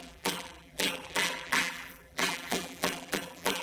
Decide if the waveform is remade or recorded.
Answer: remade